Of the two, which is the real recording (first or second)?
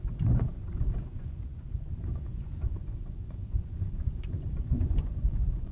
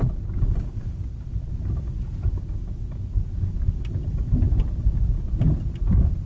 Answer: second